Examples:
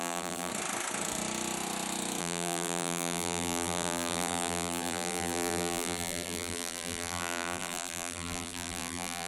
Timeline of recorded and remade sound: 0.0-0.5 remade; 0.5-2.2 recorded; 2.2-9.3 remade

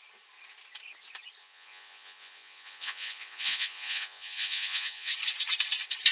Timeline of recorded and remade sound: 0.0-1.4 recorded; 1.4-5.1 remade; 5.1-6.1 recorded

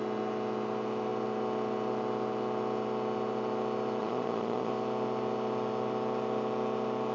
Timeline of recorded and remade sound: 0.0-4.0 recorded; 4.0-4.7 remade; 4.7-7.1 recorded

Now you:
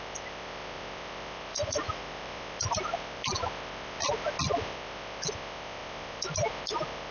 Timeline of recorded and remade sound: 0.0-1.5 recorded; 1.5-2.0 remade; 2.0-7.1 recorded

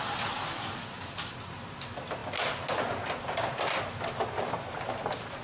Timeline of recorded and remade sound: 0.0-5.4 recorded

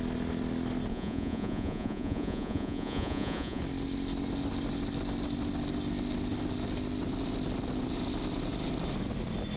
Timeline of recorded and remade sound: 0.0-0.9 recorded; 0.9-3.6 remade; 3.6-9.6 recorded

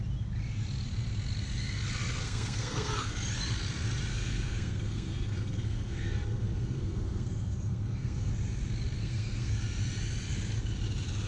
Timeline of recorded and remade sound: 0.0-2.2 recorded; 2.2-3.1 remade; 3.1-4.1 recorded; 4.1-8.3 remade; 8.3-9.0 recorded; 9.0-9.6 remade; 9.6-11.3 recorded